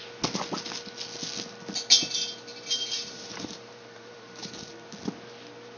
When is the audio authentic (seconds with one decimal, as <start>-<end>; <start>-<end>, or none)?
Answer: 0.0-2.5; 4.7-5.8